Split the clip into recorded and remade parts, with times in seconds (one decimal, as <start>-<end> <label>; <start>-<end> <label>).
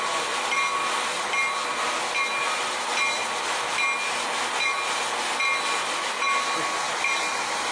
0.0-7.7 recorded